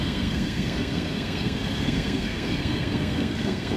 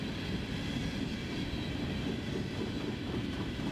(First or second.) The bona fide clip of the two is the second